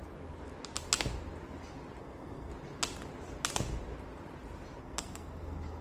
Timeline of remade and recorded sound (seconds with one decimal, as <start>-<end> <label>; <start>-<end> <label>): 0.0-2.0 recorded; 2.0-2.5 remade; 2.5-4.8 recorded; 4.8-5.8 remade